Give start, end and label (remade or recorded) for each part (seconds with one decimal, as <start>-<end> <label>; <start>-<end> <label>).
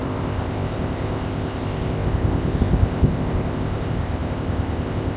0.0-5.2 remade